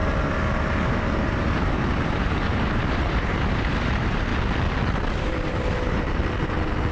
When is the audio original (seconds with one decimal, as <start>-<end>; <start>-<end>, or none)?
4.3-5.1; 6.2-6.9